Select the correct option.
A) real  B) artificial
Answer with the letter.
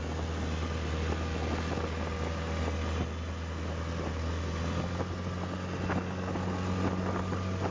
A